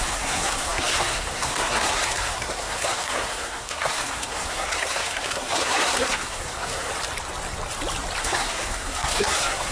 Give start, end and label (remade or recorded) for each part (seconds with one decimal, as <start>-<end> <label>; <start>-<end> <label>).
0.0-6.9 remade; 6.9-8.2 recorded; 8.2-9.7 remade